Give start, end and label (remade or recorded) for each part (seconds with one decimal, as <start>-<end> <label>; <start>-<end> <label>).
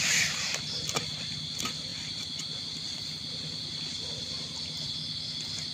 0.0-5.7 recorded